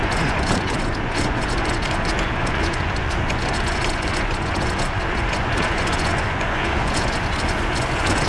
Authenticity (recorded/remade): remade